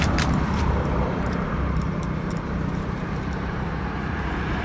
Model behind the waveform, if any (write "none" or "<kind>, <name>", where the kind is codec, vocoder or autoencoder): vocoder, BigVGAN v2